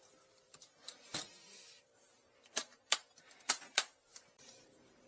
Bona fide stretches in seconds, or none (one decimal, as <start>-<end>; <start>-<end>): 1.1-1.8